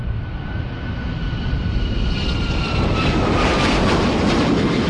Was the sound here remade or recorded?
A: recorded